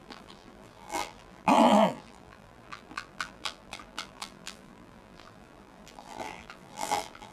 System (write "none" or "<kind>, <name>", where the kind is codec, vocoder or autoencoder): vocoder, BigVGAN v2